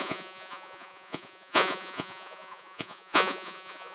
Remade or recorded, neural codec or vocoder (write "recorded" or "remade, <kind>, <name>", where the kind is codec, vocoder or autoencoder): remade, vocoder, Vocos